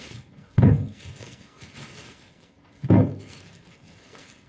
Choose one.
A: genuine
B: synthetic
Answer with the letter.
B